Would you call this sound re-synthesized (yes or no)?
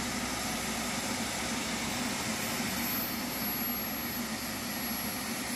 no